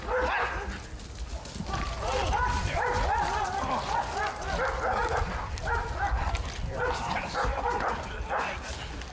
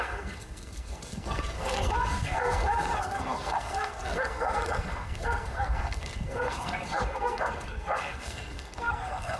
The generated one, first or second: second